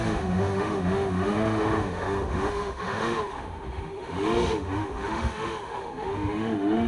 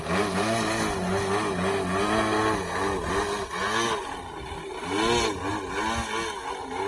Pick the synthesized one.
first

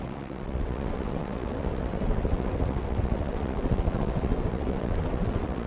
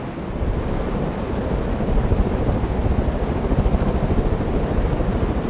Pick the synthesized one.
first